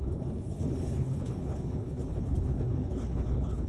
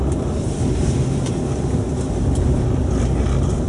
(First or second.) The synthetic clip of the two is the first